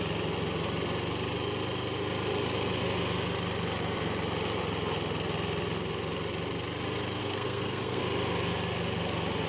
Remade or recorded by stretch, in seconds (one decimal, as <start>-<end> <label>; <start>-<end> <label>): 0.0-7.2 recorded; 7.2-8.0 remade; 8.0-9.5 recorded